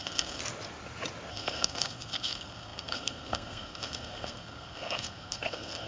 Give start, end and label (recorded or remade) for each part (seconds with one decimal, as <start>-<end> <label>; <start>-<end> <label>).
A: 0.0-0.4 remade; 0.4-1.3 recorded; 1.3-5.9 remade